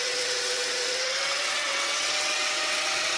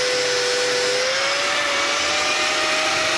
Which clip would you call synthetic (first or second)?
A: first